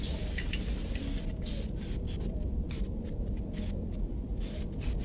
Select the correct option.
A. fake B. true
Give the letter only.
B